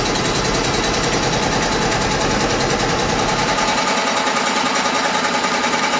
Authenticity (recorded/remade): recorded